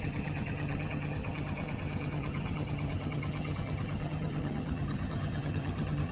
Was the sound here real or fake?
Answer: fake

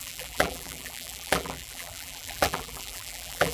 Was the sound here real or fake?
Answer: fake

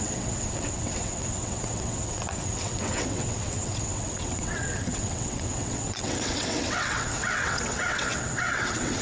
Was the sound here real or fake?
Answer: fake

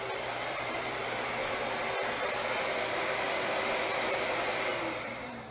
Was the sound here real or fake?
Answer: fake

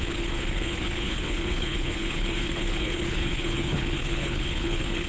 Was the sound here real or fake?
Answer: fake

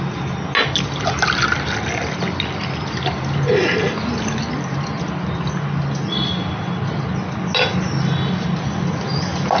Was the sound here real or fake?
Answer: real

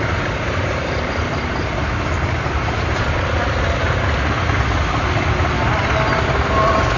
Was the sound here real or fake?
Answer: real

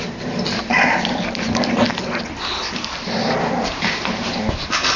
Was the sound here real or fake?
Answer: real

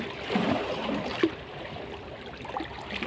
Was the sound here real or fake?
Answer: real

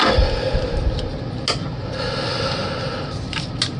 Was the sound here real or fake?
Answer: real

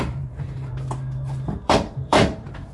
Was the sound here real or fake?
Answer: fake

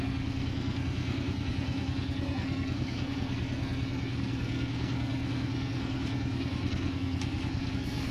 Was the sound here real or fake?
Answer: fake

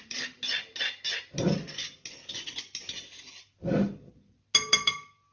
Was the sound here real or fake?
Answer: real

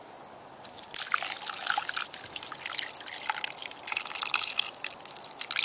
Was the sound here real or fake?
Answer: real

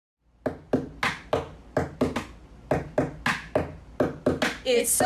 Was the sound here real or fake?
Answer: real